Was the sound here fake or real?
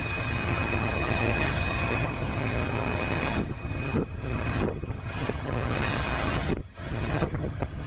fake